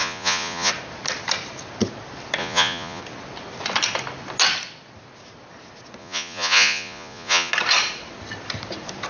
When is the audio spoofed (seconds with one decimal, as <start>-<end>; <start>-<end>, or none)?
0.0-0.7; 2.4-3.0; 6.0-7.5